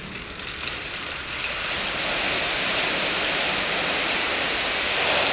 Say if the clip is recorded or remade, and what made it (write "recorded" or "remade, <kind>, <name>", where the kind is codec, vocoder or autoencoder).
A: recorded